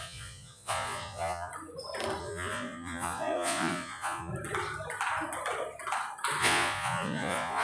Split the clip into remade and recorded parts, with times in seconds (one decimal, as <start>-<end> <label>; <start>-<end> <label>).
0.0-1.5 remade; 1.5-2.2 recorded; 2.2-4.3 remade; 4.3-6.4 recorded; 6.4-7.6 remade